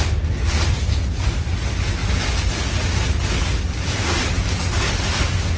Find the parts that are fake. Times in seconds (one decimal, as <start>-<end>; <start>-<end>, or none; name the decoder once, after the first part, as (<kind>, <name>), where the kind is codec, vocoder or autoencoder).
none